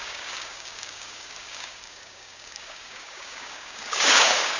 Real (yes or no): no